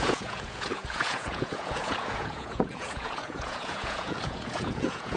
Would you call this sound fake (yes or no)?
yes